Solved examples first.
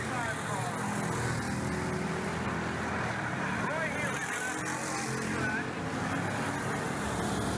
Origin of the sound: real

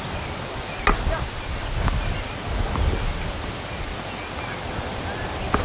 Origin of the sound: real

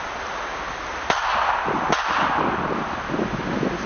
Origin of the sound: real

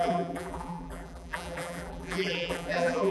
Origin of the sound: fake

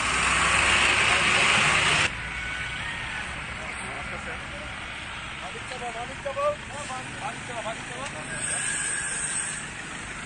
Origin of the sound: real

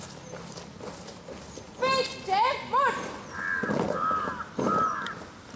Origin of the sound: real